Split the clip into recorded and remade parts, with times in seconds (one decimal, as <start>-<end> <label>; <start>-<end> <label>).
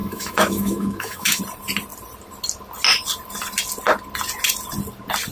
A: 0.0-1.4 remade; 1.4-5.3 recorded